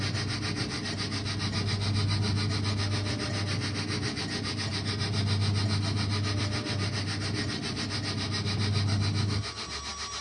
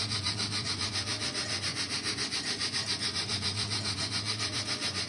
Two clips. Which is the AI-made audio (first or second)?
second